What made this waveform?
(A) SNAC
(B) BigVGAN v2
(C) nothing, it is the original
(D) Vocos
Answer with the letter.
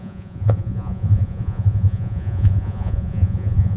D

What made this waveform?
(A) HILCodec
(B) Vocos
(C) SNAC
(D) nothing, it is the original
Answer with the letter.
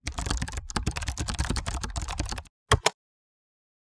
D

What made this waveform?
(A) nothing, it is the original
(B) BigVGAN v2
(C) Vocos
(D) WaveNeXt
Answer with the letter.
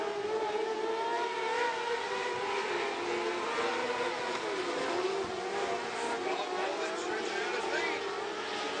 A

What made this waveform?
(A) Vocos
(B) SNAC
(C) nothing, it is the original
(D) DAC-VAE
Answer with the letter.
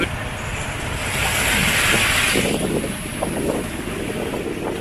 C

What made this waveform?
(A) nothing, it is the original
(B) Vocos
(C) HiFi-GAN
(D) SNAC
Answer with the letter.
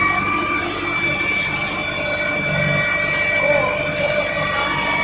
A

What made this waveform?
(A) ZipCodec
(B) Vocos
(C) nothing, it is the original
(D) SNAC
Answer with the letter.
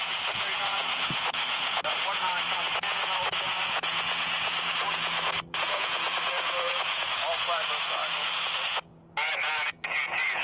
B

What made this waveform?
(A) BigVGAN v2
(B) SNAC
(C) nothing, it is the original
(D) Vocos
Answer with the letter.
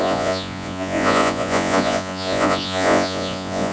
D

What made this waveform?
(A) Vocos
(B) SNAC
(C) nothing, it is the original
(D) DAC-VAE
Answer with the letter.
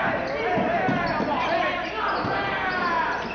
C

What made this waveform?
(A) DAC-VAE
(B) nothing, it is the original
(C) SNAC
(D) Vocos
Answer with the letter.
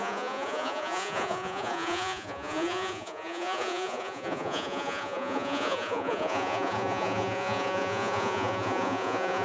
D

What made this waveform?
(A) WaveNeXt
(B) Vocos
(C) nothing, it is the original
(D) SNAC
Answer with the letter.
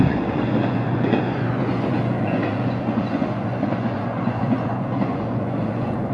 B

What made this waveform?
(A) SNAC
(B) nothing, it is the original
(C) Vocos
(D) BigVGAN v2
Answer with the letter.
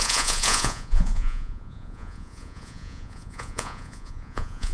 C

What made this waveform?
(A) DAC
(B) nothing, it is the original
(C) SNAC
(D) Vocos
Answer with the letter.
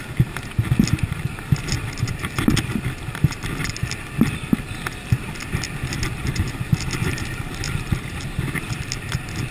B